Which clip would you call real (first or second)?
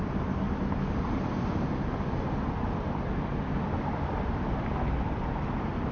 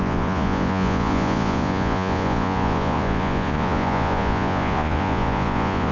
first